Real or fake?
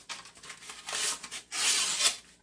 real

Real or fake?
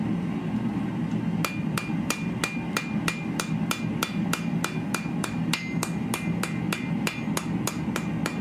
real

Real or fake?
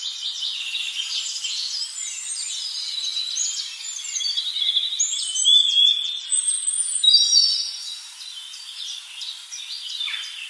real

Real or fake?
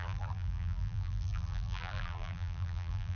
fake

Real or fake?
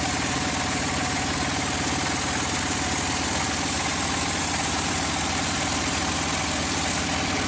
real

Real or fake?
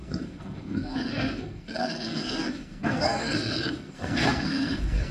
fake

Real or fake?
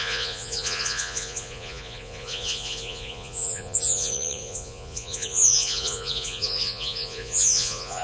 fake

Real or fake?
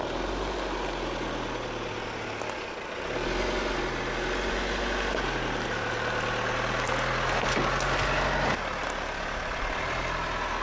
real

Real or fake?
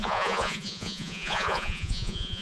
fake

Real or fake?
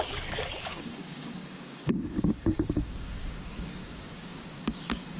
fake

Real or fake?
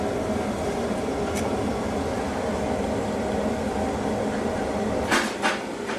real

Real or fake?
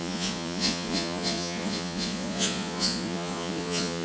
fake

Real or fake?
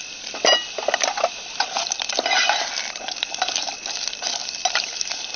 real